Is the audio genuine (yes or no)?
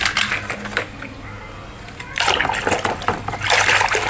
yes